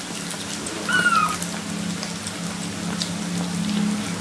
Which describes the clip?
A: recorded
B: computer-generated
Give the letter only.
A